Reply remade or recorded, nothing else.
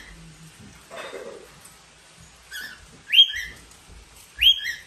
recorded